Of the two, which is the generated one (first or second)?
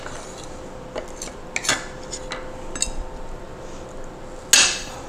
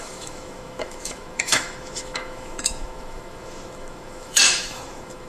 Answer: second